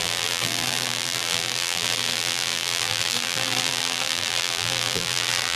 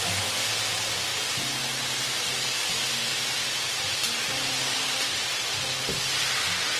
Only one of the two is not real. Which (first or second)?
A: first